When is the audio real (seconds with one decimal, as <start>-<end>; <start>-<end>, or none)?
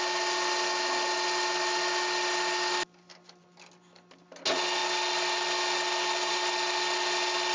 0.0-7.5